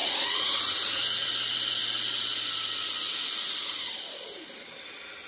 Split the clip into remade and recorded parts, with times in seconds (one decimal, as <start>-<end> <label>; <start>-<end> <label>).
0.0-1.3 remade; 1.3-5.3 recorded